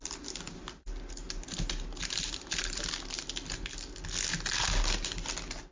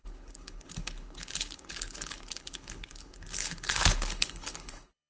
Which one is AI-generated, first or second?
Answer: second